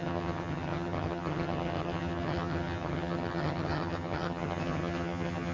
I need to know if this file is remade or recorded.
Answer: remade